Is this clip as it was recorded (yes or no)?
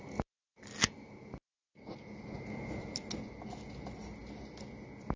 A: yes